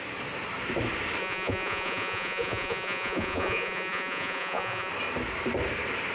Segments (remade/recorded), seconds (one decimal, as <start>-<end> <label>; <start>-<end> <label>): 0.0-1.2 recorded; 1.2-4.9 remade; 4.9-6.1 recorded